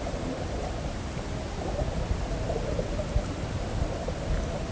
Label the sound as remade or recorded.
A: recorded